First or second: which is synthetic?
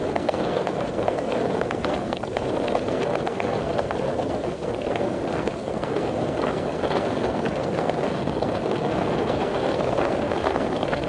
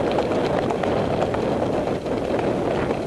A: first